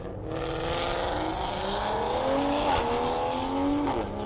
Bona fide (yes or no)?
yes